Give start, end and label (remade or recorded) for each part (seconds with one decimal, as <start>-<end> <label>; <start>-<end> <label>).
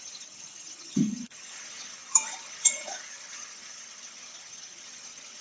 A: 0.0-5.4 remade